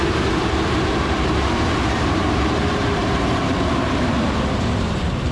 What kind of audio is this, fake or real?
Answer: fake